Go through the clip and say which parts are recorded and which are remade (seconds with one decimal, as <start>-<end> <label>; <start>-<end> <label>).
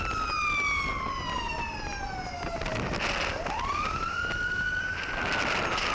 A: 0.0-5.9 recorded